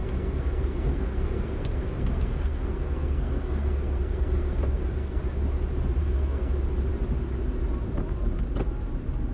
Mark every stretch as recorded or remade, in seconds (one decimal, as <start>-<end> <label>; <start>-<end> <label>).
0.0-5.2 remade; 5.2-6.0 recorded; 6.0-6.5 remade; 6.5-9.3 recorded

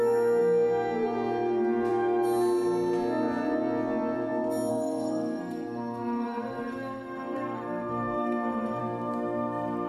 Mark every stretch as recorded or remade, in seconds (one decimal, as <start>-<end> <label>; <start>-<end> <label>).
0.0-4.7 recorded; 4.7-8.8 remade; 8.8-9.9 recorded